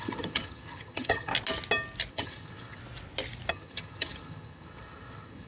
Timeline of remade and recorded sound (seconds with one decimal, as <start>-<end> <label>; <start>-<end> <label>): 0.0-1.3 remade; 1.3-2.1 recorded; 2.1-2.8 remade; 2.8-3.5 recorded; 3.5-5.5 remade